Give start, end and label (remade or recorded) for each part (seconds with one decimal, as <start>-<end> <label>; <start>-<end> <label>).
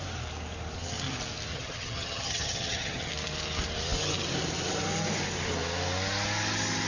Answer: 0.0-1.5 recorded; 1.5-3.1 remade; 3.1-6.9 recorded